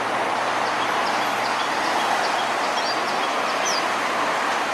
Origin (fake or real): real